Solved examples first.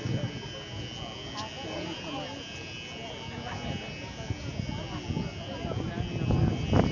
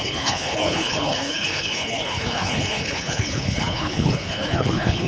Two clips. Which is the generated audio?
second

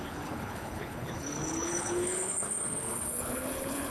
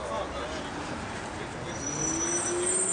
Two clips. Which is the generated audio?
first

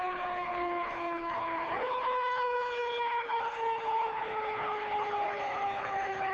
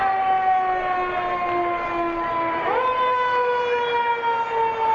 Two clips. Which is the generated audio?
first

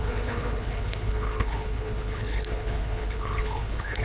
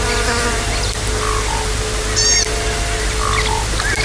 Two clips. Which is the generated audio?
first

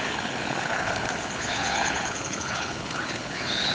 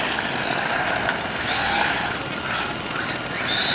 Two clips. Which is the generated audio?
first